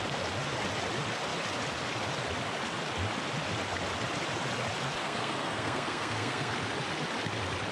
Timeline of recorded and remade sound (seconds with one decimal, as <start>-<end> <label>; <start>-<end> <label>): 0.0-5.0 recorded; 5.0-6.5 remade; 6.5-7.7 recorded